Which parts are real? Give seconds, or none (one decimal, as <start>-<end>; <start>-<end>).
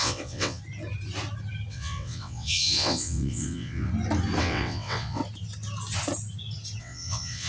0.6-1.7; 3.9-4.4; 5.2-6.8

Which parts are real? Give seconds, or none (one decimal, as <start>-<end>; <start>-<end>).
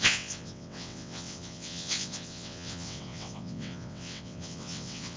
none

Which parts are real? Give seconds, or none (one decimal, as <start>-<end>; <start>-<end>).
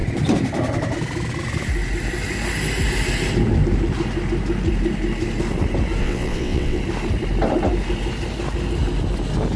0.0-6.0; 6.8-9.6